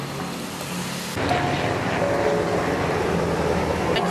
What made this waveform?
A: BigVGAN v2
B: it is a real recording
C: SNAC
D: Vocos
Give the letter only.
B